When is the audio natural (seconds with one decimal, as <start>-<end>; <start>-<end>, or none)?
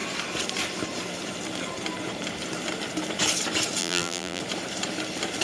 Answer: 0.0-3.8; 4.4-5.4